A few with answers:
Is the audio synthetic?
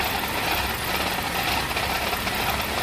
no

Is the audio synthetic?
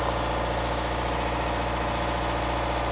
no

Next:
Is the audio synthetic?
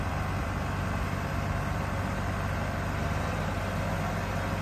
no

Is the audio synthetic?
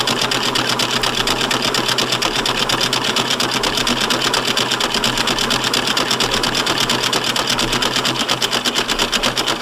no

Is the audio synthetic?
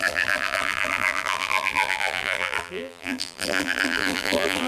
yes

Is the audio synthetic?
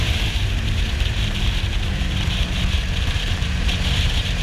yes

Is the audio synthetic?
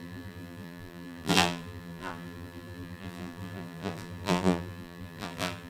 yes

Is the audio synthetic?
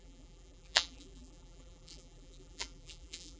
yes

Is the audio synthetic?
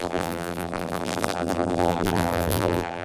yes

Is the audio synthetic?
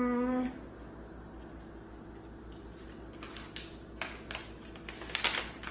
no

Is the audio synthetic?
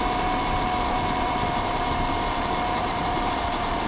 yes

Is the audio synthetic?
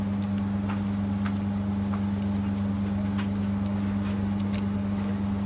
no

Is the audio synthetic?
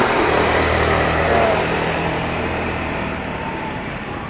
yes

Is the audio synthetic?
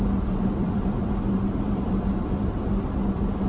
yes